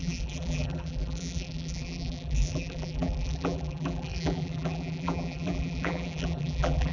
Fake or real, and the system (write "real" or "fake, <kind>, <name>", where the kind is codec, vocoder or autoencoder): fake, vocoder, BigVGAN v2